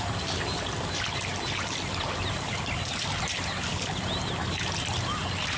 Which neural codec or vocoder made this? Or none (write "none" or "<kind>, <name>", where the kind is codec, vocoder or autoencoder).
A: none